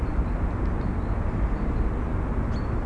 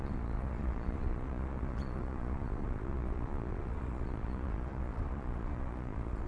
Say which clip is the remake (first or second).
second